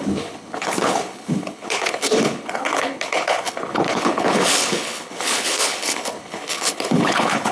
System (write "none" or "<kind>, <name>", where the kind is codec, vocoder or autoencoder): codec, HILCodec